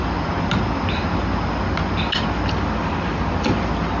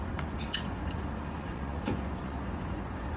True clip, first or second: first